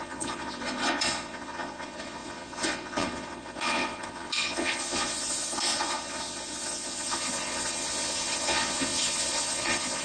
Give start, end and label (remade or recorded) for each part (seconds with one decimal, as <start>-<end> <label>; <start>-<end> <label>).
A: 0.0-10.0 remade